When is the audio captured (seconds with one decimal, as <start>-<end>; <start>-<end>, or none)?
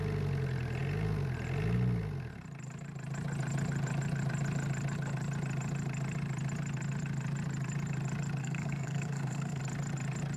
0.0-8.4; 9.6-10.4